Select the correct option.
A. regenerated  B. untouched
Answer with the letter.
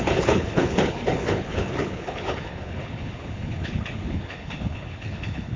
A